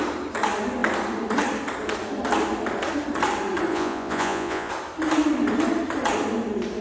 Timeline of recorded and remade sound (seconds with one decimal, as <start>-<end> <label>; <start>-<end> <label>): 0.0-3.7 recorded; 3.7-4.7 remade; 4.7-6.8 recorded